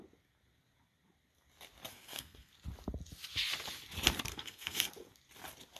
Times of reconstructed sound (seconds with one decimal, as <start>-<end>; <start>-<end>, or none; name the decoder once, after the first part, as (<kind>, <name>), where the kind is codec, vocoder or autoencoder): 1.9-2.5 (codec, SNAC); 4.3-4.9